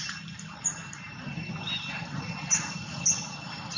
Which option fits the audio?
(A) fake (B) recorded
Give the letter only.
B